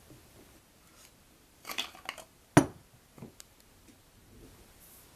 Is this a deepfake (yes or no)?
no